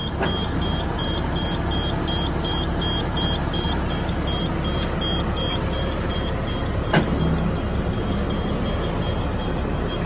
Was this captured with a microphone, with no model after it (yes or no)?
yes